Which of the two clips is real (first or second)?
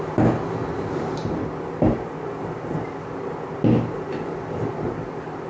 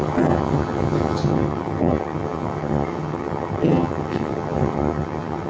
first